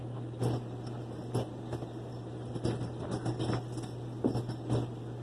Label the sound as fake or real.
real